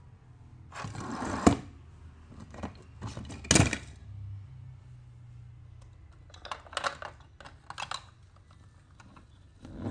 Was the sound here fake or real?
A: real